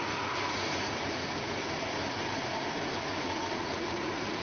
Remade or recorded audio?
remade